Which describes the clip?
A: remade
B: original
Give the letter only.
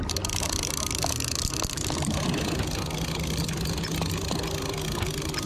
B